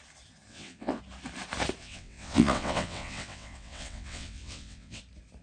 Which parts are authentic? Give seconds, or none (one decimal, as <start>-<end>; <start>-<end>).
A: 0.0-0.5; 1.0-1.8; 5.0-5.4